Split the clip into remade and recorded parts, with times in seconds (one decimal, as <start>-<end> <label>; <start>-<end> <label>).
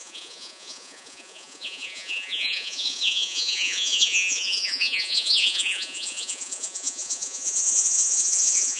0.0-8.8 remade